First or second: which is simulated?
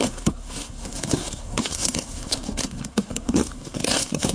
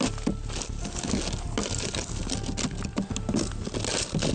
first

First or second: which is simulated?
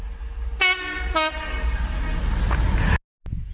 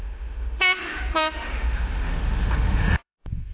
second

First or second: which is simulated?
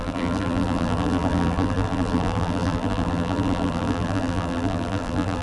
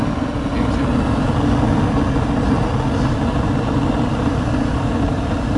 first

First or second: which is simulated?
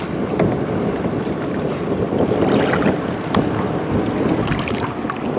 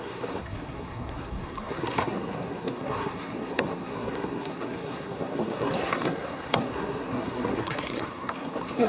second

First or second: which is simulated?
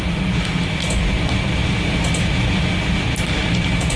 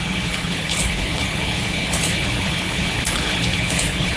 second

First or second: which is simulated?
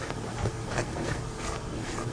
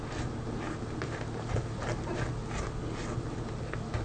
first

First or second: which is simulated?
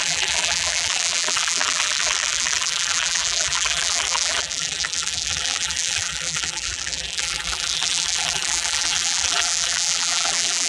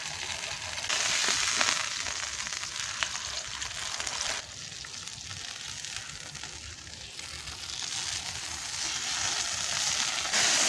first